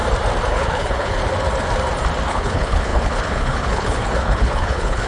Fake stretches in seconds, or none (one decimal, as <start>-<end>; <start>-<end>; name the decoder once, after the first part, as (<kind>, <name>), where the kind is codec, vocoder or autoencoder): 0.5-1.2 (codec, HILCodec); 2.3-5.1